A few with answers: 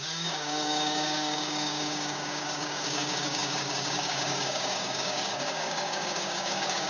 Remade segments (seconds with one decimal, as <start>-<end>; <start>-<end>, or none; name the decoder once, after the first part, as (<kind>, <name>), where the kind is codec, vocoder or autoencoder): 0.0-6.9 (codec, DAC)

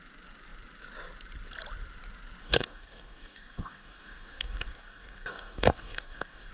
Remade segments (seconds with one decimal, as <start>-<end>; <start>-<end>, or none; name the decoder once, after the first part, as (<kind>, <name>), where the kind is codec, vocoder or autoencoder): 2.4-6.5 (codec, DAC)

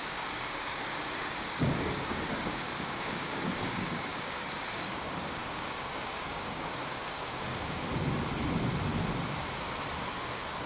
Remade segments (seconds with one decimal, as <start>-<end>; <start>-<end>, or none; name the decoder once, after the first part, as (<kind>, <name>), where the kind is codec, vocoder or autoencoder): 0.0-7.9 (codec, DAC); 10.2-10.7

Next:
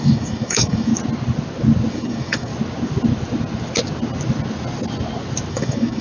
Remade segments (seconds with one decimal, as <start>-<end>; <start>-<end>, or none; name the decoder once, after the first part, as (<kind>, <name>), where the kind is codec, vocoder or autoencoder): 0.0-0.9 (codec, DAC); 1.9-2.5; 5.5-6.0

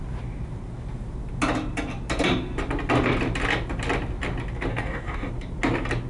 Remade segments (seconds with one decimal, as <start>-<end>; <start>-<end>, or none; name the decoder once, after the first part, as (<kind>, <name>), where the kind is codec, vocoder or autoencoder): 4.7-5.3 (codec, DAC)

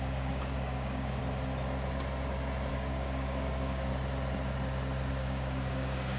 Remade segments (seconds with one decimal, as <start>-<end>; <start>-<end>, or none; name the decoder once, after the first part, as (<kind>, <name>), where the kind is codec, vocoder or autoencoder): 0.0-1.2 (codec, DAC); 2.7-3.9; 5.1-6.2

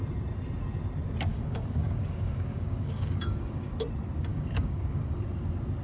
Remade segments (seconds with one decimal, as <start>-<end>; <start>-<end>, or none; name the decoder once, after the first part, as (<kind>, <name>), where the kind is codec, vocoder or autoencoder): 1.3-3.7 (codec, DAC); 4.3-5.2

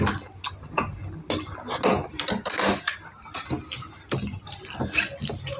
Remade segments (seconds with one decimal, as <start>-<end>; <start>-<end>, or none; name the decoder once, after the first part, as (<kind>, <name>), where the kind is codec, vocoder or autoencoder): none